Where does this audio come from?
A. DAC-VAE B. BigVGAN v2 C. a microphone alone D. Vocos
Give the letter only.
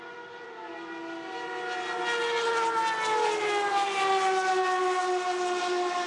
C